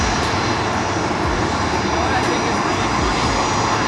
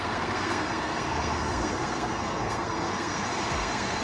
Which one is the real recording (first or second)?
first